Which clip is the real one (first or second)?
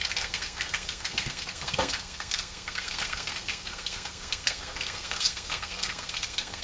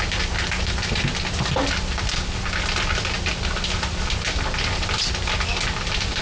second